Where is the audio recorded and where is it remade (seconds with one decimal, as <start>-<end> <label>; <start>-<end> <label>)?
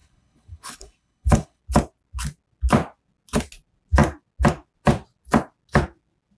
0.0-1.6 remade; 1.6-6.4 recorded